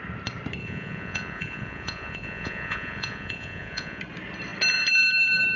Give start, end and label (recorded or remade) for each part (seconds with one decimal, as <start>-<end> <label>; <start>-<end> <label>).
0.0-0.6 recorded; 0.6-4.0 remade; 4.0-5.6 recorded